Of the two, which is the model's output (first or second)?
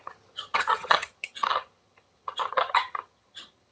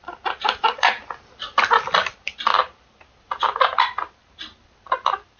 first